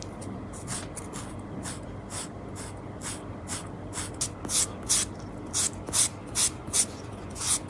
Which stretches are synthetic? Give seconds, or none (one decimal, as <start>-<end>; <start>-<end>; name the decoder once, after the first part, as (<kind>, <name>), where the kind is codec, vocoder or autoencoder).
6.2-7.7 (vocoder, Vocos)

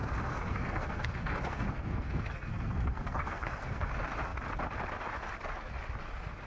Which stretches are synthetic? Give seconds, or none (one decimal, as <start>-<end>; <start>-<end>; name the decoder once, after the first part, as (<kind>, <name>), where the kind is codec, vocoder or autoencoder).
0.0-3.9 (codec, SNAC)

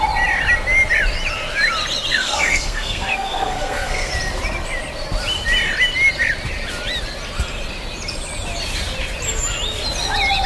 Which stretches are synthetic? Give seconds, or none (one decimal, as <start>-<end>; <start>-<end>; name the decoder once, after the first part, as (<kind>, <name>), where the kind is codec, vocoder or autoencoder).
2.1-4.1 (codec, SNAC)

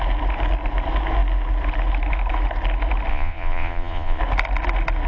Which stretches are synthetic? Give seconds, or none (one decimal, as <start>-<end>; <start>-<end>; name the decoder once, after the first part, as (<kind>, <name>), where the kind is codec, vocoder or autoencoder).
3.1-4.2 (vocoder, Vocos)

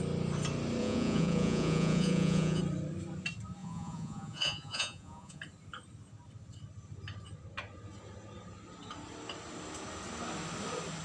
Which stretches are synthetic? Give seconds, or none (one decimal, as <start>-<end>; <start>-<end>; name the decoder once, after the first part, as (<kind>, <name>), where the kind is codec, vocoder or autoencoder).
0.8-2.6 (vocoder, Vocos); 3.6-5.4

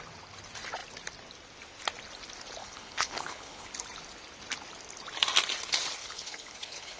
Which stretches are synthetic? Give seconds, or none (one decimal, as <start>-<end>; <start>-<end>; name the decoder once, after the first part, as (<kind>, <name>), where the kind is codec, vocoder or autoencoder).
2.6-3.7 (codec, HILCodec); 6.0-7.0

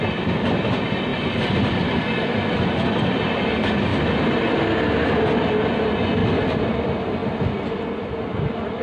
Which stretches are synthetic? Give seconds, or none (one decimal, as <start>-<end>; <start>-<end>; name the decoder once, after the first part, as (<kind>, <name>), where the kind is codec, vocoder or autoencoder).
0.0-1.1 (vocoder, BigVGAN v2); 1.7-3.9; 5.1-6.2; 6.7-7.2; 8.2-8.8

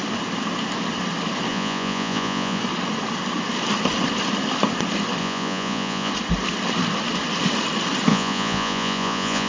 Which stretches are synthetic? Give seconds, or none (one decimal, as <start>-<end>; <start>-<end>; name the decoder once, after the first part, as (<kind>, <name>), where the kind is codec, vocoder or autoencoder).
1.5-2.6 (vocoder, Vocos); 5.2-6.1; 8.1-9.5